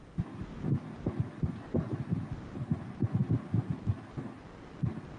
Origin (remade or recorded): recorded